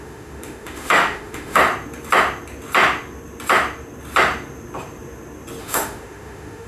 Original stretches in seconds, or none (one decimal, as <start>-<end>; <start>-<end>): 1.6-5.6